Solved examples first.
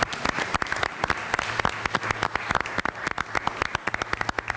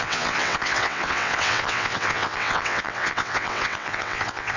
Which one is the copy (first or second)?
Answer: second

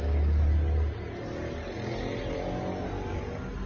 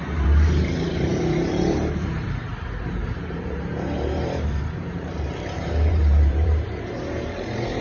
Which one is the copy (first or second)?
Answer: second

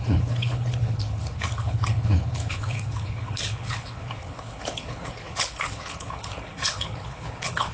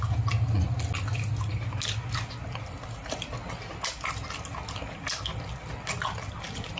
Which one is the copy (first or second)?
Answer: first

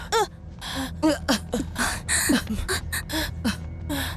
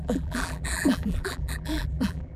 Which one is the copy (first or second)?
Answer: second